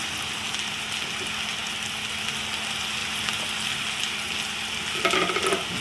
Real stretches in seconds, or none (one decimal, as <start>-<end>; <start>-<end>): 0.0-5.8